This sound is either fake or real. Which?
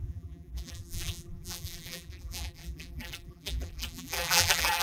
fake